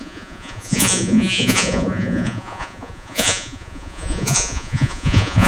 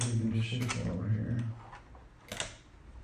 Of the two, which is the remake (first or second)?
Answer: first